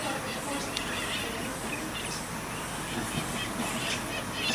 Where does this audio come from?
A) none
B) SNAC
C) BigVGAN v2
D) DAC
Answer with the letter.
A